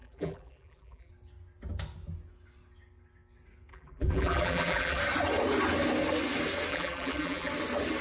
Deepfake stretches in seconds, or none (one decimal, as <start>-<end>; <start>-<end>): 0.0-1.1; 3.7-5.0; 6.7-7.5